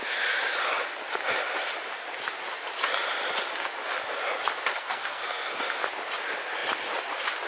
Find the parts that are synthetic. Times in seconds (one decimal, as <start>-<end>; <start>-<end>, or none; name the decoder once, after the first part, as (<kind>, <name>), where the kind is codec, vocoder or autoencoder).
4.7-5.6 (codec, SNAC)